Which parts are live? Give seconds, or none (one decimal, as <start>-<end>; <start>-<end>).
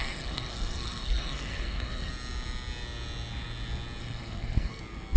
2.1-4.0; 4.8-5.2